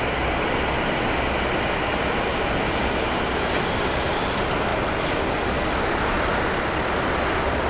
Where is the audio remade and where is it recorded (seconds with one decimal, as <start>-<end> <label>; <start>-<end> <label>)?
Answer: 0.0-7.7 recorded